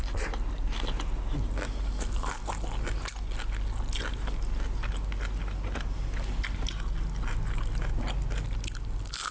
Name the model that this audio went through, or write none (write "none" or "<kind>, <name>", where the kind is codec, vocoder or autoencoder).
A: none